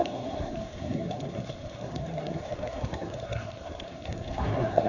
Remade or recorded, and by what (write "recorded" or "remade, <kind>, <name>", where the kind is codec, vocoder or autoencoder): remade, codec, SNAC